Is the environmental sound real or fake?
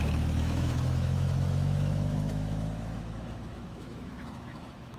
fake